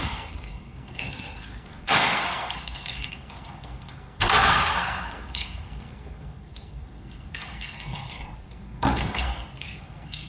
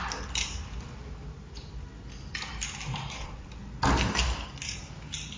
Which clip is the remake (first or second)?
first